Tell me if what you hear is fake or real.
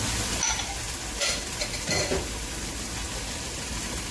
real